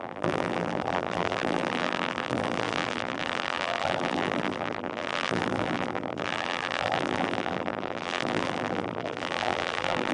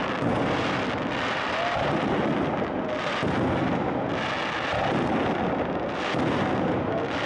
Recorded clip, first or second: second